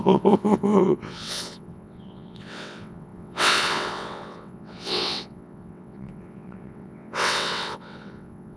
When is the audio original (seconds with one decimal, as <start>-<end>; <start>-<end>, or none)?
none

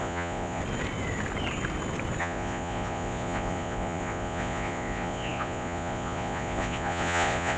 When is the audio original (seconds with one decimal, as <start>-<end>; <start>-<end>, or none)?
0.6-2.2

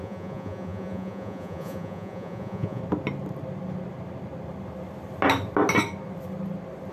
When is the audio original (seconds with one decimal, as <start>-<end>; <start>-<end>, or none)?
2.8-6.9

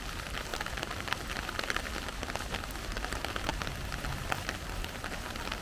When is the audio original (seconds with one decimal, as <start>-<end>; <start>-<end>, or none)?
0.0-5.6

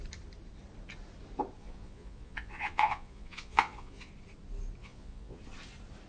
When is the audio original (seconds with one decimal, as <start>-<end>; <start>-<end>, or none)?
0.0-1.6; 4.1-4.8; 5.4-6.1

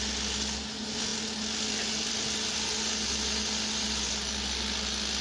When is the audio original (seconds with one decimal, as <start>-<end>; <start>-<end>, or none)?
0.0-5.2